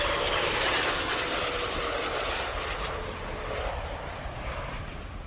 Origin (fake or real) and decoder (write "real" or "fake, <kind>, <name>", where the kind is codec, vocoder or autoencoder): real